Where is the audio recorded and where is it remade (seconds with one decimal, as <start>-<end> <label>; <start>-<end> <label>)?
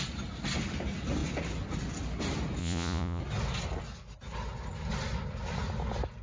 0.0-2.6 recorded; 2.6-3.2 remade; 3.2-6.2 recorded